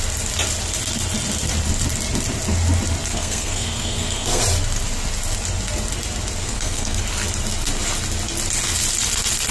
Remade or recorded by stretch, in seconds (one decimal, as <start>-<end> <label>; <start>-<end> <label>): 0.0-3.1 recorded; 3.1-4.4 remade; 4.4-6.4 recorded; 6.4-7.0 remade; 7.0-9.5 recorded